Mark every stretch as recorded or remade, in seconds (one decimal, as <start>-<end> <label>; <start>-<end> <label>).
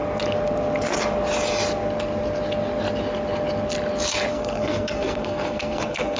0.0-4.3 recorded; 4.3-6.2 remade